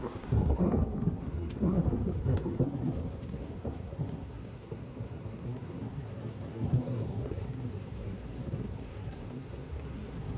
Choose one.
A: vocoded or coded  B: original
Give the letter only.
A